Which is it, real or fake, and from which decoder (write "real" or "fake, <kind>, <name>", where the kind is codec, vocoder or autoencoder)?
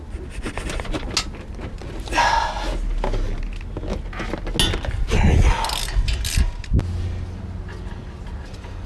real